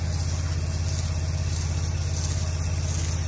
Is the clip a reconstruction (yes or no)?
no